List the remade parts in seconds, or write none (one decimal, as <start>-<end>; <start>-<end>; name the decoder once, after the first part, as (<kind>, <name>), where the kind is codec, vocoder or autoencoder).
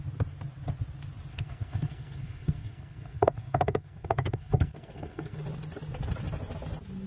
1.3-5.4 (codec, SNAC)